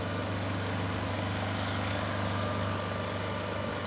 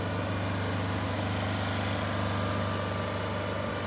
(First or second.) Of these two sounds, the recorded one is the second